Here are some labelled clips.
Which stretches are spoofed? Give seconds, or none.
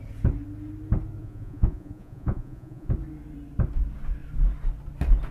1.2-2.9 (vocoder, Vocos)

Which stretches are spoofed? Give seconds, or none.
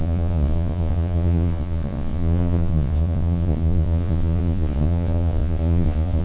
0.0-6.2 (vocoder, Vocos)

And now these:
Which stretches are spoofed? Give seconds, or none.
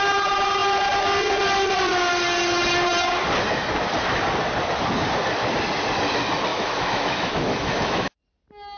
6.5-8.1 (autoencoder, DAC-VAE)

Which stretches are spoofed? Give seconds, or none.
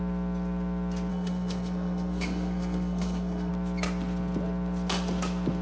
1.1-3.5 (codec, SNAC)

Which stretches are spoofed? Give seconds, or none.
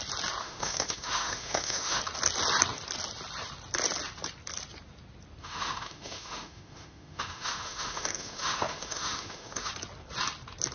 0.4-2.0 (autoencoder, DAC-VAE); 5.4-9.7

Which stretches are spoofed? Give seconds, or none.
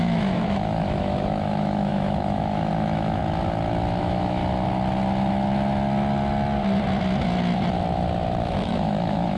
0.0-3.2 (autoencoder, DAC-VAE); 4.0-4.4; 8.4-9.4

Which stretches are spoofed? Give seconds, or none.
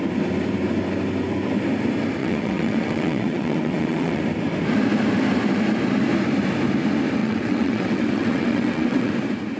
2.2-4.2 (vocoder, WaveNeXt); 7.2-9.1